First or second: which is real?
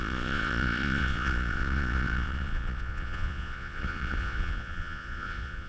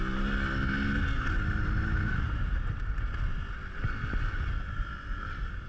second